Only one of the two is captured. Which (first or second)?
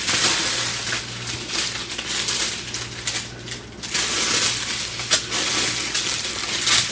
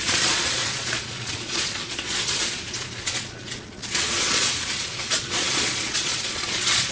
first